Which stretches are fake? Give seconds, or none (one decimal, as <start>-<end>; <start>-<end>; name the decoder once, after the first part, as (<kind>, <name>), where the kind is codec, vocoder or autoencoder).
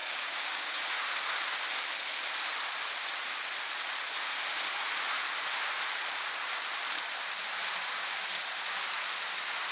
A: 0.0-0.8 (codec, DAC); 7.7-8.3